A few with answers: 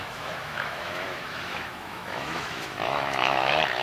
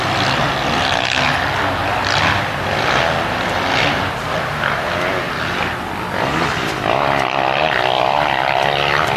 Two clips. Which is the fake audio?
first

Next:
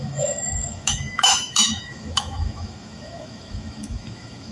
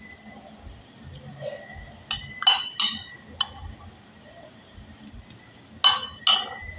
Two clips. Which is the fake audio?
first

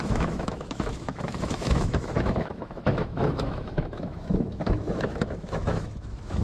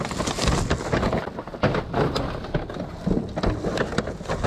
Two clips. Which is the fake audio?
first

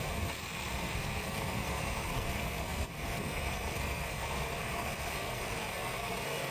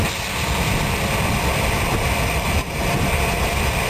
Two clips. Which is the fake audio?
first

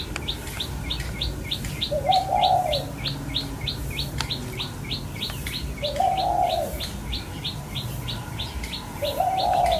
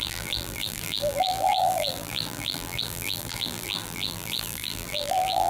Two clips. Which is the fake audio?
second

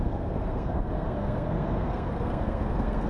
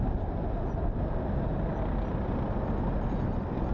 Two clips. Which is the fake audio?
first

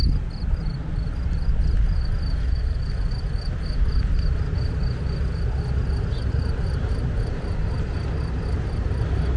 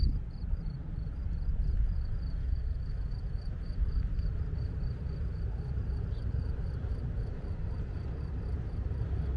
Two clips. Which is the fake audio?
second